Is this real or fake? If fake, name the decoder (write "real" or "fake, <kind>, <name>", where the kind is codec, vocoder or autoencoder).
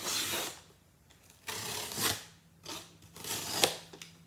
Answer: real